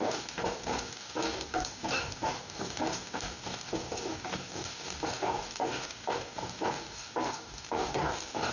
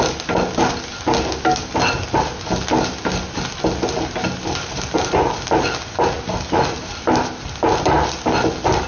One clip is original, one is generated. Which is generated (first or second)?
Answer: first